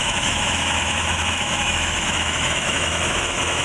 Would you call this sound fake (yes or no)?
yes